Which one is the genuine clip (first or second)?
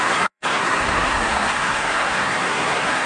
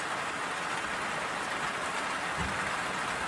second